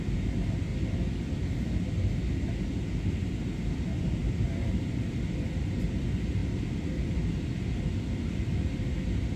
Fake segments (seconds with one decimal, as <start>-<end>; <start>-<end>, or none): 0.0-0.7; 4.0-6.4; 7.9-9.4